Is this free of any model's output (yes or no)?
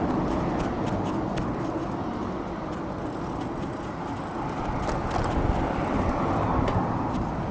yes